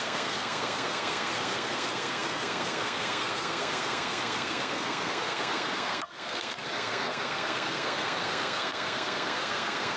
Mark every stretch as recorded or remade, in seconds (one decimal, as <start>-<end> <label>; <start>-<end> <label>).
0.0-10.0 remade